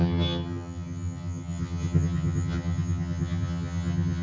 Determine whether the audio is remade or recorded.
remade